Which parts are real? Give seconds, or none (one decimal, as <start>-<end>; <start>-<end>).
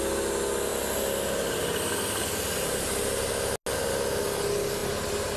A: 0.0-5.4